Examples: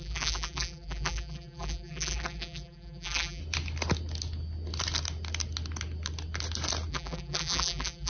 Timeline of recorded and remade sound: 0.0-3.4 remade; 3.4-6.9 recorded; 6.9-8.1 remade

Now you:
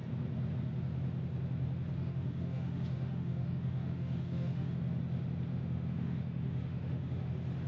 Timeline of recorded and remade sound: 0.0-1.9 recorded; 1.9-4.8 remade; 4.8-5.5 recorded; 5.5-7.3 remade; 7.3-7.7 recorded

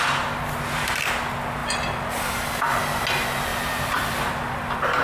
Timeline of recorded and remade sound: 0.0-3.5 recorded; 3.5-4.3 remade; 4.3-5.0 recorded

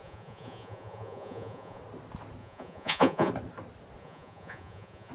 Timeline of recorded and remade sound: 0.0-1.8 remade; 1.8-2.4 recorded; 2.4-3.3 remade; 3.3-4.0 recorded; 4.0-5.1 remade

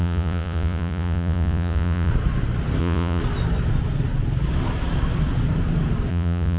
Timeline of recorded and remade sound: 0.0-2.1 remade; 2.1-2.8 recorded; 2.8-3.2 remade; 3.2-6.1 recorded; 6.1-6.6 remade

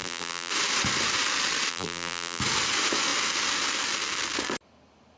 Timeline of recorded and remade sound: 0.0-0.5 remade; 0.5-1.7 recorded; 1.7-2.4 remade; 2.4-5.2 recorded